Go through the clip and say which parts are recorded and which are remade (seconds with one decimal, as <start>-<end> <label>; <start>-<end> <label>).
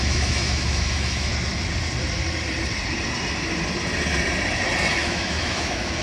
0.0-1.3 remade; 1.3-4.9 recorded; 4.9-6.0 remade